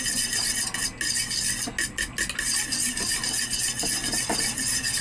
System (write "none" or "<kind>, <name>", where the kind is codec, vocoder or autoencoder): none